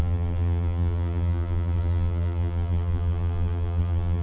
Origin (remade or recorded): remade